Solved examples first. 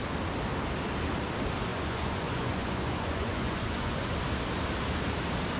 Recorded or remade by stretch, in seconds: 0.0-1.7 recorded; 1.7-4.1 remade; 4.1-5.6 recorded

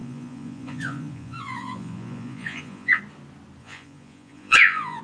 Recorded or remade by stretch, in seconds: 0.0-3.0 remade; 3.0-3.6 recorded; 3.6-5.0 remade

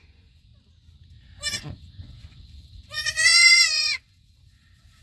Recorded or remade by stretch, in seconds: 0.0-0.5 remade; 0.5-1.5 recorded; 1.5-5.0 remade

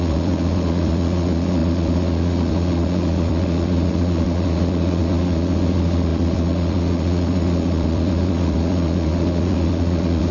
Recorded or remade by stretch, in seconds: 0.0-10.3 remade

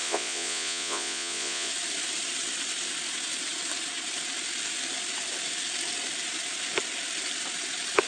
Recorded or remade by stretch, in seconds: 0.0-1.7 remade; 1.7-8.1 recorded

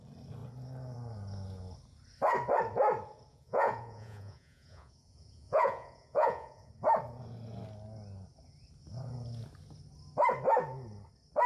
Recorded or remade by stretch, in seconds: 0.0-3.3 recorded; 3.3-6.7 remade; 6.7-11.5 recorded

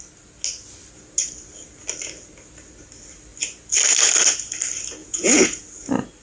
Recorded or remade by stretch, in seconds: 0.0-5.0 recorded; 5.0-5.6 remade; 5.6-6.2 recorded

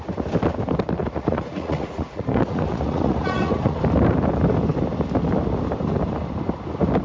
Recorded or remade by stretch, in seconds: 0.0-1.0 recorded; 1.0-3.8 remade; 3.8-7.0 recorded